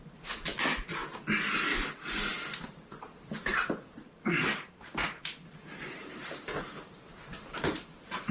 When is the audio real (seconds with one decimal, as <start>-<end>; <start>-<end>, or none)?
0.5-2.7